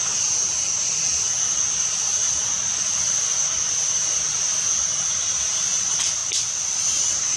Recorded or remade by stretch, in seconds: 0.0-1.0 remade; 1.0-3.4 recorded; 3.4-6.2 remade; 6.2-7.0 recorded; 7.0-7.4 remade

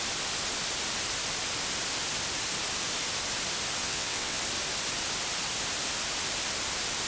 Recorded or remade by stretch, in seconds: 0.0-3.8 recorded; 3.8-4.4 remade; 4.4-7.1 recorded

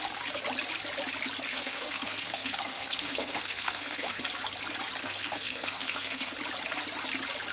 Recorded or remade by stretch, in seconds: 0.0-1.5 recorded; 1.5-4.2 remade; 4.2-5.0 recorded; 5.0-6.3 remade; 6.3-7.5 recorded

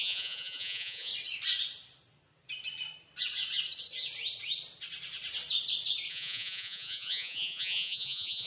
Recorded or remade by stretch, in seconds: 0.0-1.1 remade; 1.1-6.1 recorded; 6.1-8.5 remade

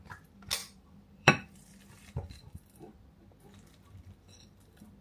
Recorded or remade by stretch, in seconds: 0.0-0.6 recorded; 0.6-3.0 remade; 3.0-5.0 recorded

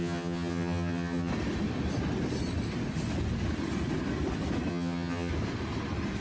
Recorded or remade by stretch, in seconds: 0.0-1.3 remade; 1.3-4.7 recorded; 4.7-5.3 remade; 5.3-6.2 recorded